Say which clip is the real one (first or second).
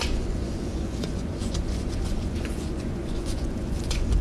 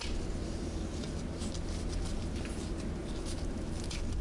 second